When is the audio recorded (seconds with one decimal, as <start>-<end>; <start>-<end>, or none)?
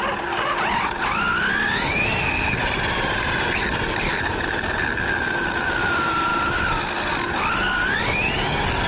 0.0-1.3; 5.2-8.9